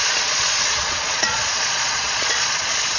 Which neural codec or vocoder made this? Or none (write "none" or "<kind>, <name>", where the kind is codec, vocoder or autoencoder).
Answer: vocoder, Vocos